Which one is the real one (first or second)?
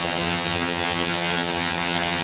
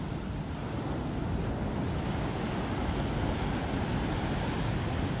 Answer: second